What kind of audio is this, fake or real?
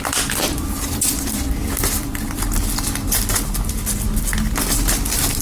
real